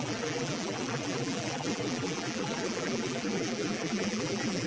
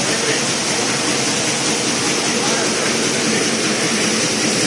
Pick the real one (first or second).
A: second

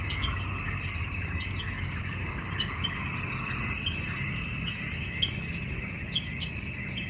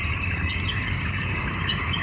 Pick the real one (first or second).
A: first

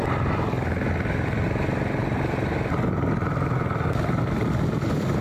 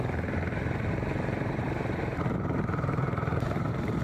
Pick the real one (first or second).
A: first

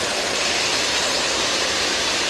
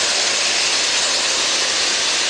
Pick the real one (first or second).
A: second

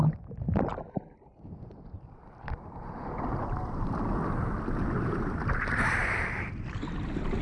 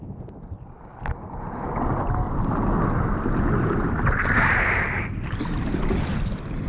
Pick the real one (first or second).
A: second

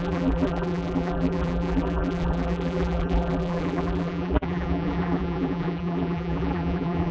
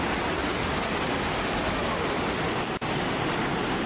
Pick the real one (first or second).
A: second